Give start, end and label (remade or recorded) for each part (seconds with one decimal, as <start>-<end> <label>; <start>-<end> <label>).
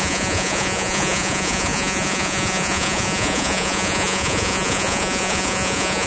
0.0-6.1 remade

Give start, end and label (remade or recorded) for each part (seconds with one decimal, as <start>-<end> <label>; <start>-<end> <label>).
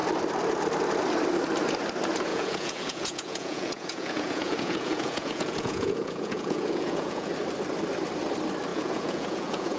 0.0-2.3 recorded; 2.3-7.3 remade; 7.3-8.7 recorded; 8.7-9.8 remade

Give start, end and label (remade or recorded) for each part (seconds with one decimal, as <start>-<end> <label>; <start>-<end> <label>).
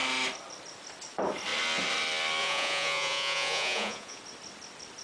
0.0-2.4 recorded; 2.4-4.2 remade; 4.2-5.0 recorded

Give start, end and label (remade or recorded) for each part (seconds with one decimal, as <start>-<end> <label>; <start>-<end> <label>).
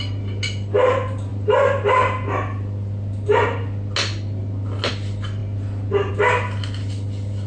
0.0-7.5 recorded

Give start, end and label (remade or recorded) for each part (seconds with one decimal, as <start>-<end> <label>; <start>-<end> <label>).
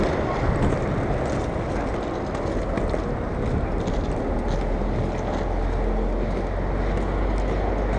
0.0-8.0 recorded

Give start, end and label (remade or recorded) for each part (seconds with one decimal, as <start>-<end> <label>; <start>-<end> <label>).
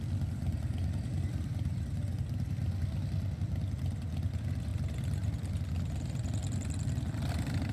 0.0-7.7 recorded